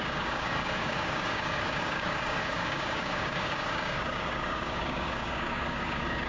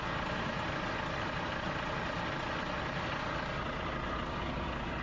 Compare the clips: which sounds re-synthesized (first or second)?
first